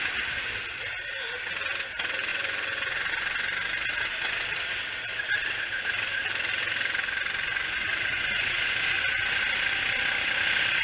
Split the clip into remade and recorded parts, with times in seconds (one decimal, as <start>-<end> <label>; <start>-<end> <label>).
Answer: 0.0-2.3 recorded; 2.3-3.1 remade; 3.1-7.4 recorded; 7.4-9.4 remade; 9.4-10.8 recorded

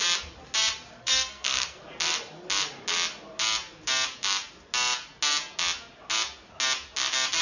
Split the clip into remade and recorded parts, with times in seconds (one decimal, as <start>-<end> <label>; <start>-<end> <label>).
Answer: 0.0-1.0 recorded; 1.0-1.8 remade; 1.8-7.4 recorded

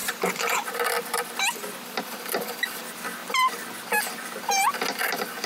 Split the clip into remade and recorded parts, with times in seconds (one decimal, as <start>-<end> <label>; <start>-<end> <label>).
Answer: 0.0-2.8 remade; 2.8-5.5 recorded

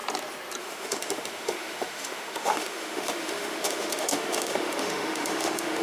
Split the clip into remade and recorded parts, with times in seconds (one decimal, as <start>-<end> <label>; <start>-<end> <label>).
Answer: 0.0-0.6 recorded; 0.6-5.8 remade